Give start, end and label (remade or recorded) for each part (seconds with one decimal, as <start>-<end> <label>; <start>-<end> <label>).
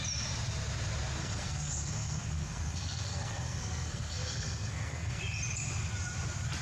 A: 0.0-1.2 recorded; 1.2-5.2 remade; 5.2-6.6 recorded